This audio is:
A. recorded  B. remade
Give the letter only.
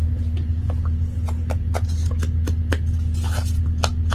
A